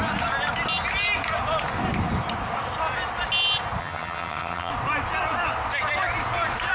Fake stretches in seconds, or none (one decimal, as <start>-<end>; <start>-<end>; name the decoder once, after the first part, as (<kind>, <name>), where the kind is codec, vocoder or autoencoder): 3.8-4.7 (vocoder, HiFi-GAN)